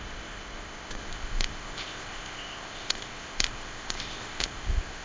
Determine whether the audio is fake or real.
fake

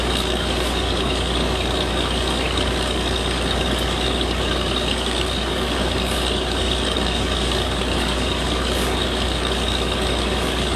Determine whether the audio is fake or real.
fake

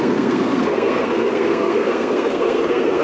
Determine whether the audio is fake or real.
fake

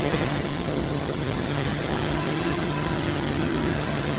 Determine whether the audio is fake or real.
fake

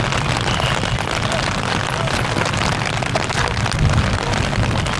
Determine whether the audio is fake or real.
real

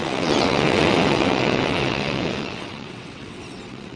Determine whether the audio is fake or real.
fake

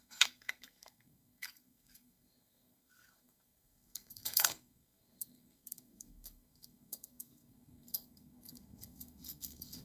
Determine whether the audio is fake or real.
fake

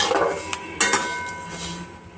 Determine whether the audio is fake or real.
real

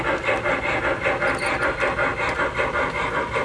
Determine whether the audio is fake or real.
real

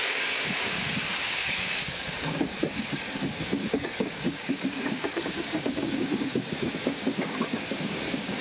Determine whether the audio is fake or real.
fake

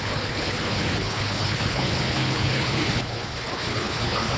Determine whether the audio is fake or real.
fake